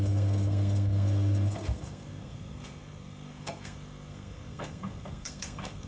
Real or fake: fake